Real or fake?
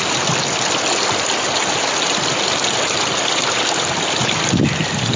real